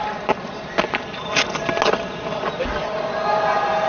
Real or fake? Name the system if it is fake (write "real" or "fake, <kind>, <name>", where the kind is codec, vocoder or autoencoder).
real